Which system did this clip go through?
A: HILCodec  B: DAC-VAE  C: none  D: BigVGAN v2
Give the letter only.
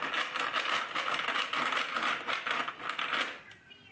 C